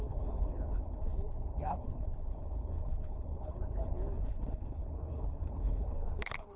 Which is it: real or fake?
fake